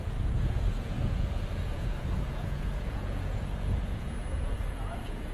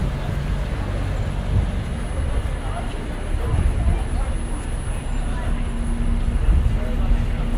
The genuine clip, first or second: second